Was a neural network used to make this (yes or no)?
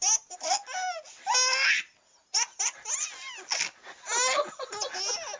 no